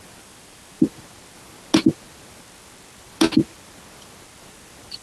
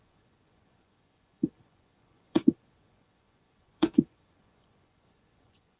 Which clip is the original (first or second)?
first